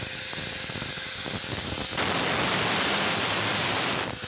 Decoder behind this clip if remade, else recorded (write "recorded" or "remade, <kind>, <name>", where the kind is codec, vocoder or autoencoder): recorded